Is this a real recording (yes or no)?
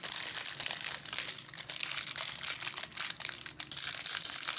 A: yes